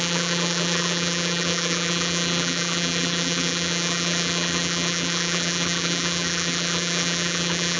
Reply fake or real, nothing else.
fake